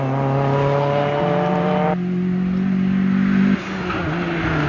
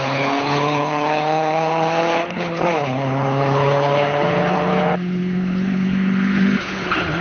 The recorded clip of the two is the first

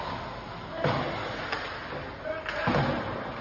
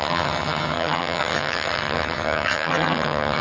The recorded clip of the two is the first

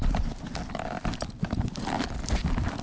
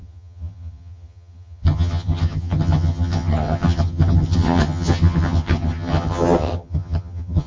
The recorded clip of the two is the first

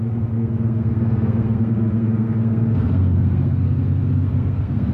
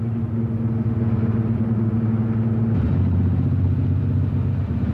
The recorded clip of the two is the second